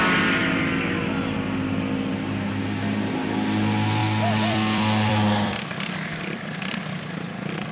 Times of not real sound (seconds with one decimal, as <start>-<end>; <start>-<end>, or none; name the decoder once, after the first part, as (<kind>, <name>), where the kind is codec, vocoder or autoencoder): 4.0-7.7 (vocoder, BigVGAN v2)